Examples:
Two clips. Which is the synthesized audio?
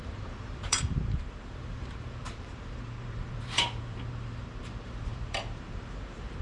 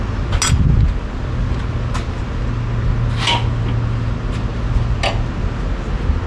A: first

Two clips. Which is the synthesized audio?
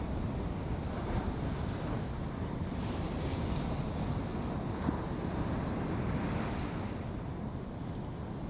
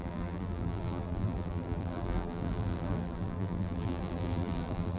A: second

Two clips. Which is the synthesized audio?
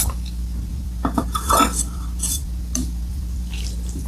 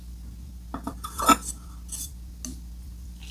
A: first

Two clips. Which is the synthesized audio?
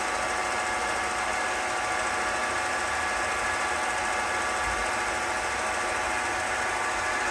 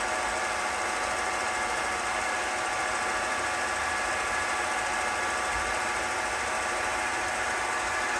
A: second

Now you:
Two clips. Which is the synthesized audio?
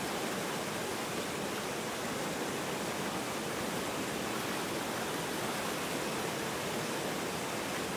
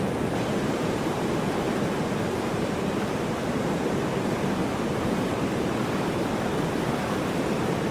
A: second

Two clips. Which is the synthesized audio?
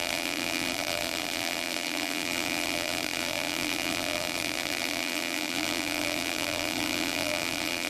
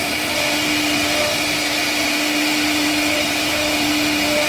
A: first